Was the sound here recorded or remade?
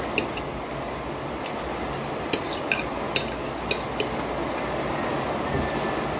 recorded